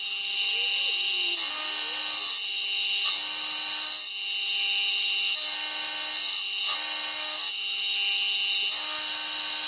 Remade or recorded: recorded